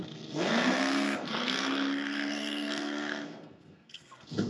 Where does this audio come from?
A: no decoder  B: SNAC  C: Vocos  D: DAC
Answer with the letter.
B